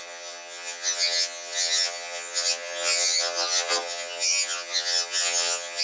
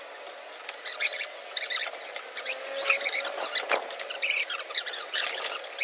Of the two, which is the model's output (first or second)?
first